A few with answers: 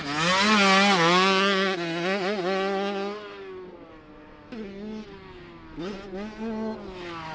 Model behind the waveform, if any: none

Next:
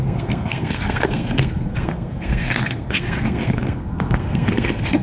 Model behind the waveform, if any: codec, SNAC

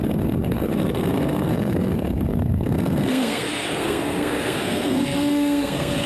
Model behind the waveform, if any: codec, SNAC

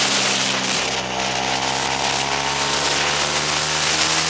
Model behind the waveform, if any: none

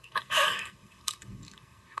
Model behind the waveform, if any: codec, SNAC